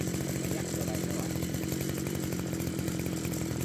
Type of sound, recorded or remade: remade